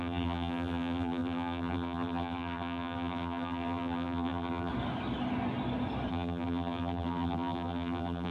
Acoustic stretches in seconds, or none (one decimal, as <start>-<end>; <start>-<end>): 4.7-6.1